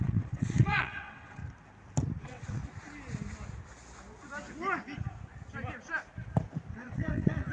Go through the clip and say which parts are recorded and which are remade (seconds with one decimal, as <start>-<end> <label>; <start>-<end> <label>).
0.0-1.4 remade; 1.4-2.2 recorded; 2.2-2.6 remade; 2.6-6.7 recorded; 6.7-7.5 remade